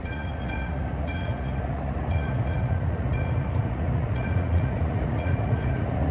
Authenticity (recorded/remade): remade